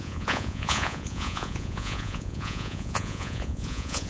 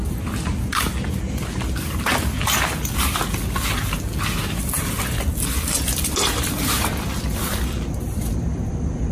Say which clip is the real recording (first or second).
second